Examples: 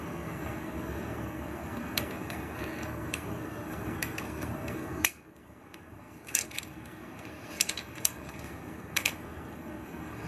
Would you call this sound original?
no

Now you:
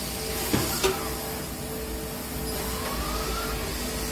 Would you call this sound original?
yes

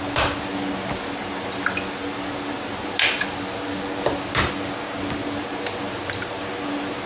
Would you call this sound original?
yes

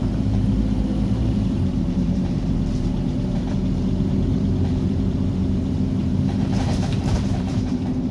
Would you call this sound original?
no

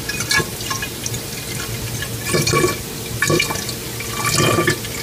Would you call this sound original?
yes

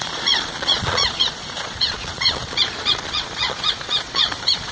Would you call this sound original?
no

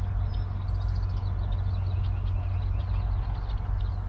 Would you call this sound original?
yes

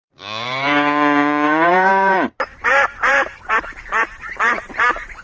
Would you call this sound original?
no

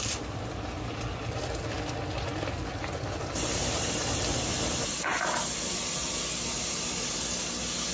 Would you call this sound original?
yes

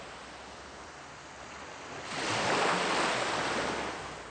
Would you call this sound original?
yes